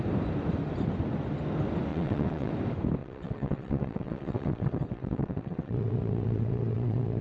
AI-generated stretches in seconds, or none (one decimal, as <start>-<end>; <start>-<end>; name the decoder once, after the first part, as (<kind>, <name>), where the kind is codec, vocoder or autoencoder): 1.9-2.5 (vocoder, WaveNeXt); 3.0-7.2